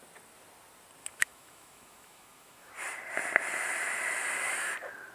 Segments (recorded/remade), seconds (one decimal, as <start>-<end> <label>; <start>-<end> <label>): 0.0-1.0 recorded; 1.0-2.7 remade; 2.7-5.1 recorded